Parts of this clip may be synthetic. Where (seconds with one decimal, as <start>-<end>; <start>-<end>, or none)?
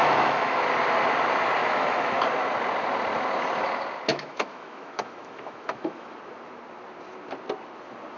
0.0-0.6; 1.6-2.2; 4.1-6.2